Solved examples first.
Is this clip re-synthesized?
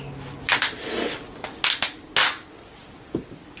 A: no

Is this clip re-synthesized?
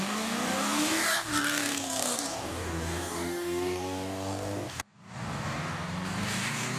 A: yes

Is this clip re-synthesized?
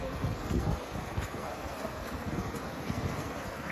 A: yes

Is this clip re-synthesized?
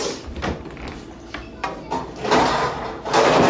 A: no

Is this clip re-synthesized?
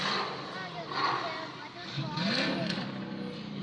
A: no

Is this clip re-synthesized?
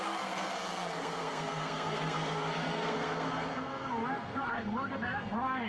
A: yes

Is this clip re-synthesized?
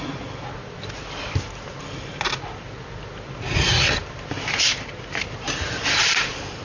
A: no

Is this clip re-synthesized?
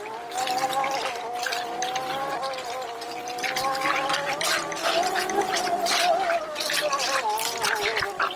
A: no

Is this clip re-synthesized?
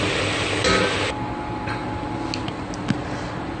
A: no